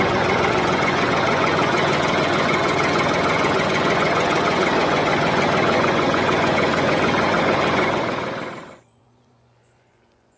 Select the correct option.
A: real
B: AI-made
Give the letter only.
B